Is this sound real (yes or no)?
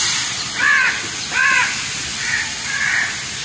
yes